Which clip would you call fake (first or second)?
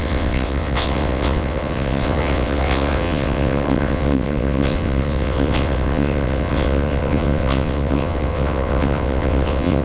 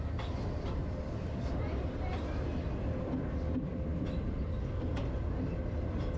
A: first